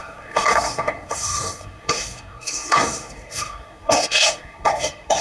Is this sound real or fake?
fake